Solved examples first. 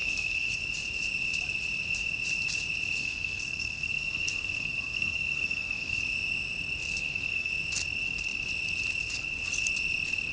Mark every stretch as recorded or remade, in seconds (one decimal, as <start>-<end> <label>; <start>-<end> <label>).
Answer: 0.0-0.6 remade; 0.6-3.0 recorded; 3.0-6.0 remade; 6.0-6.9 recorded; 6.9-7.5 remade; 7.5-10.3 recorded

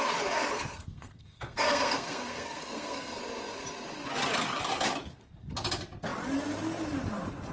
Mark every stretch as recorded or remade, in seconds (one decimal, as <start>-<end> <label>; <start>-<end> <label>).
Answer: 0.0-0.5 recorded; 0.5-3.2 remade; 3.2-7.5 recorded

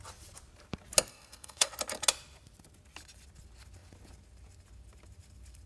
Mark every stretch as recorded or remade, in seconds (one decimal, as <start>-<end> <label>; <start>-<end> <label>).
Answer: 0.0-1.1 recorded; 1.1-1.7 remade; 1.7-5.7 recorded

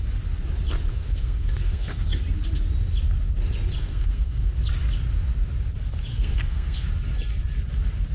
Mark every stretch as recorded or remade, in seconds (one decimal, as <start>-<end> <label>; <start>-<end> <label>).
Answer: 0.0-0.9 recorded; 0.9-2.2 remade; 2.2-3.8 recorded; 3.8-4.5 remade; 4.5-6.1 recorded; 6.1-6.9 remade; 6.9-8.1 recorded